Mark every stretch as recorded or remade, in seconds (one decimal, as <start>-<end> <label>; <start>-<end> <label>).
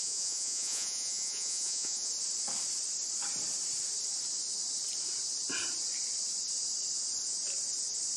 0.0-2.1 remade; 2.1-8.2 recorded